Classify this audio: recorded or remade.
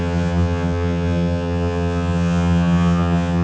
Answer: remade